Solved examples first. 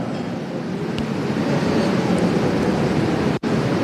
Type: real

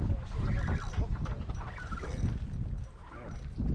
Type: real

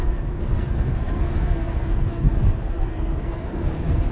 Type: fake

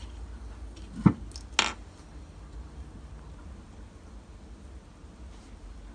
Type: real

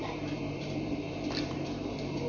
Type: fake